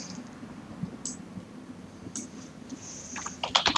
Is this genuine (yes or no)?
yes